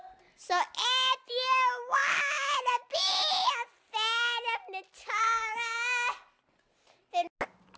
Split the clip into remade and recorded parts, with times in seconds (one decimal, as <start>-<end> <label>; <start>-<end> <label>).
0.0-7.8 recorded